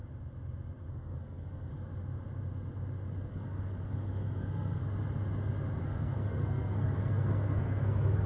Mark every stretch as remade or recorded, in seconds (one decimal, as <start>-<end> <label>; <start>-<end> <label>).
0.0-0.9 recorded; 0.9-1.7 remade; 1.7-3.3 recorded; 3.3-4.8 remade; 4.8-5.8 recorded; 5.8-8.3 remade